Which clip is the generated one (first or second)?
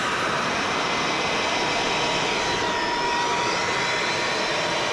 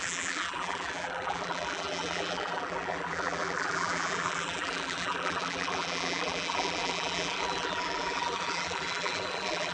second